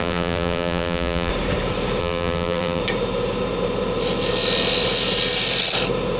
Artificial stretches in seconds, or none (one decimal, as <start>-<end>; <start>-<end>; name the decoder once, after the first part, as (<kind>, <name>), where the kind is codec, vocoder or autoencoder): 0.0-1.3 (vocoder, BigVGAN v2); 2.0-2.8